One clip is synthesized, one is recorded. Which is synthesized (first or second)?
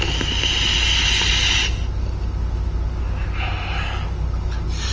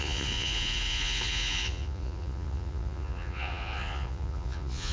second